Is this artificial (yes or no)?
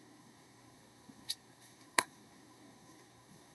yes